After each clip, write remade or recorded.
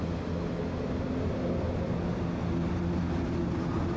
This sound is recorded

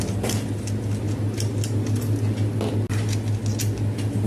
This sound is recorded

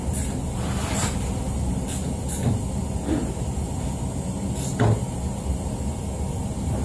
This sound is recorded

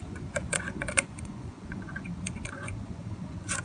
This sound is remade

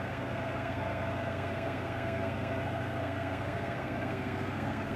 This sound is remade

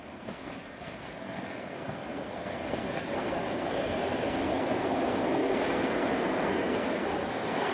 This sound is remade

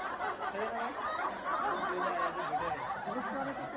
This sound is recorded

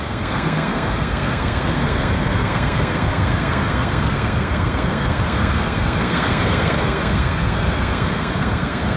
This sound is remade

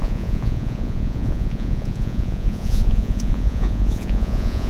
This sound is remade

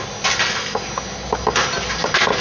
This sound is recorded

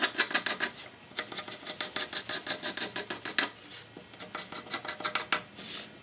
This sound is recorded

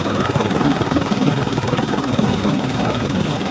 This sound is remade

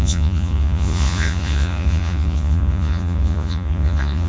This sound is remade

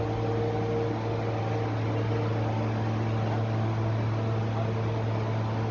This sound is recorded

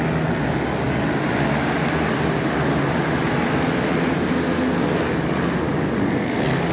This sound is recorded